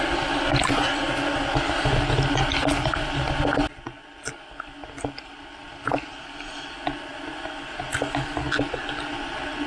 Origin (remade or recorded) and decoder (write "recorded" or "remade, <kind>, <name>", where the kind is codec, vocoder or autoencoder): recorded